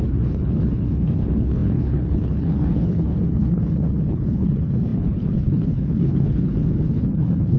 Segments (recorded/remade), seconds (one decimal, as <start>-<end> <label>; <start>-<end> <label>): 0.0-7.6 remade